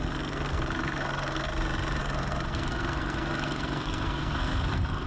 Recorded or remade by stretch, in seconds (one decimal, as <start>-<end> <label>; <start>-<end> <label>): 0.0-1.5 remade; 1.5-2.0 recorded; 2.0-5.1 remade